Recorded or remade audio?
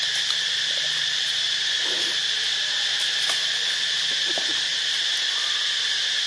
remade